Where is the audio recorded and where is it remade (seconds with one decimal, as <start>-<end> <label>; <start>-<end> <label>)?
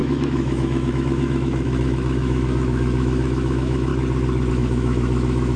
0.0-3.9 remade; 3.9-4.5 recorded; 4.5-5.6 remade